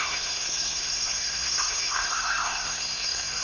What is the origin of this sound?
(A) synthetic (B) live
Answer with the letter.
A